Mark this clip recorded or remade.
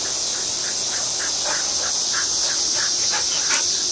recorded